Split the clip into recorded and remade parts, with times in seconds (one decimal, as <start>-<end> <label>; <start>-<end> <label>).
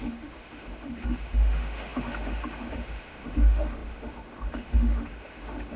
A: 0.0-5.8 remade